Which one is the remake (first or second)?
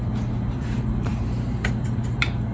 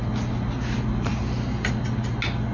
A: first